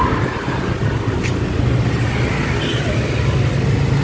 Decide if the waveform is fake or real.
real